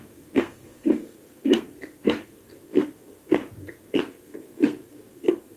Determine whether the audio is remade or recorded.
remade